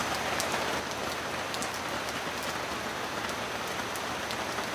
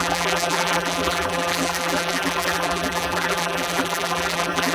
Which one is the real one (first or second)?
first